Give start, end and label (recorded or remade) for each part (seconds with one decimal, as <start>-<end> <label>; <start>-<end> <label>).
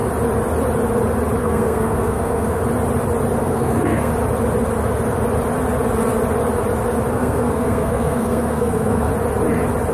0.0-1.4 recorded; 1.4-2.6 remade; 2.6-3.4 recorded; 3.4-4.1 remade; 4.1-7.1 recorded; 7.1-9.1 remade; 9.1-9.9 recorded